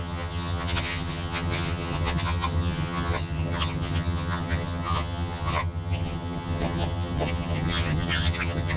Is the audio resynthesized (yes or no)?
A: yes